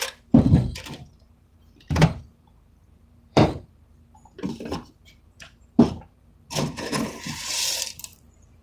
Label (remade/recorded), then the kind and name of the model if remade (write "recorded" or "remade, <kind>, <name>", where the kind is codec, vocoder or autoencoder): remade, vocoder, BigVGAN v2